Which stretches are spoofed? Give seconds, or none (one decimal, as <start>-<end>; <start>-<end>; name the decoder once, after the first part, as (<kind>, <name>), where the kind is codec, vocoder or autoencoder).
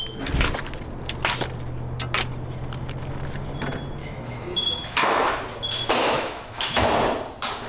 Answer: 4.0-5.3 (autoencoder, DAC-VAE); 6.0-6.9